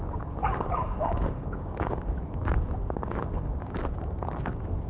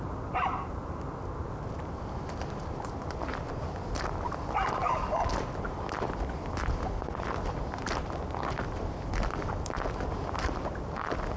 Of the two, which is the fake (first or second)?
first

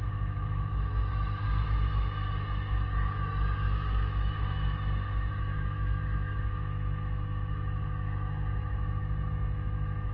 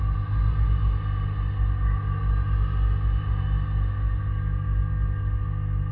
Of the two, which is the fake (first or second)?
first